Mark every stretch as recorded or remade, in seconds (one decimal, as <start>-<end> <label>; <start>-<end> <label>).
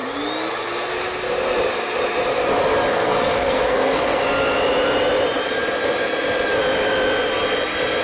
0.0-2.9 recorded; 2.9-4.2 remade; 4.2-8.0 recorded